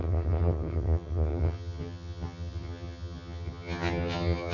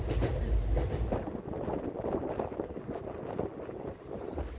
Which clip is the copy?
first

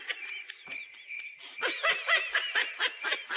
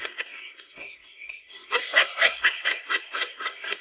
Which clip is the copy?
second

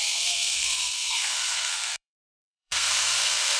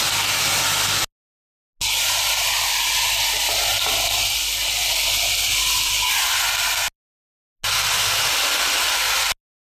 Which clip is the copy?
first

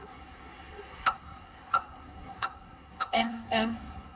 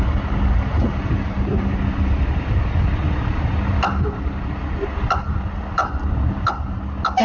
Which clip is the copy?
first